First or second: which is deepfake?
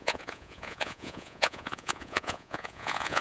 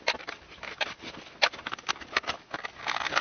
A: first